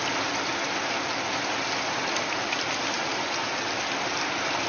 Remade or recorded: recorded